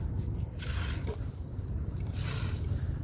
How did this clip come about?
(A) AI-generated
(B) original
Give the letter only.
B